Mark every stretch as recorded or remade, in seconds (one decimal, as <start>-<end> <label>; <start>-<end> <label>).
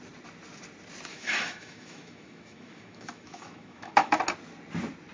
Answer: 0.0-1.1 recorded; 1.1-4.2 remade; 4.2-5.1 recorded